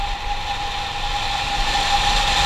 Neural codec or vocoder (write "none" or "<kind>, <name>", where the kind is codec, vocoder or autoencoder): none